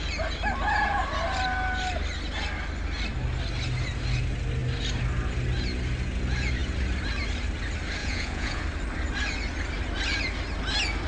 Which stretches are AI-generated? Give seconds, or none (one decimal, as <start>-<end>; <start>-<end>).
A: 8.0-8.6